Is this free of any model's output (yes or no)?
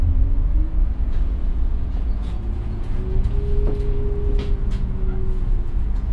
no